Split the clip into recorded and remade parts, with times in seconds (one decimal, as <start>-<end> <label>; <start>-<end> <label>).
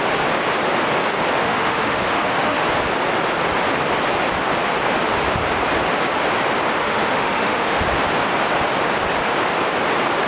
0.0-1.4 recorded; 1.4-2.6 remade; 2.6-6.8 recorded; 6.8-7.8 remade; 7.8-10.3 recorded